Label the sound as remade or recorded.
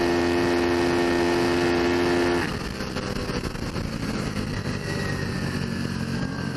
recorded